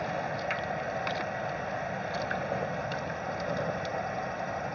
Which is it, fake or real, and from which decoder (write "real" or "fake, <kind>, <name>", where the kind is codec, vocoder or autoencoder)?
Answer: real